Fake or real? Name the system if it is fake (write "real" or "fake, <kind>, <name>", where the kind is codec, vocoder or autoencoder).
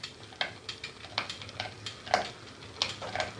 real